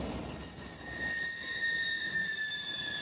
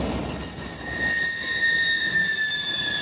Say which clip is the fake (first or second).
first